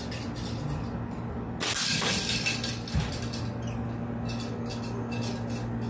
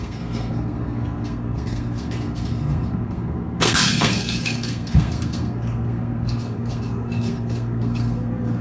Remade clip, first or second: second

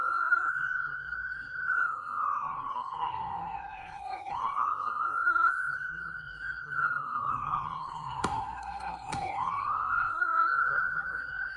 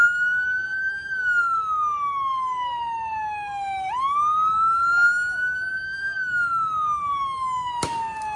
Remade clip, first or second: first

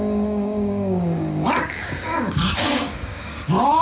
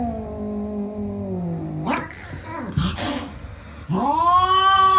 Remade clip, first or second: first